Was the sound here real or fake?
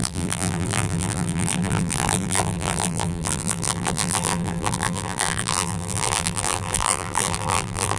fake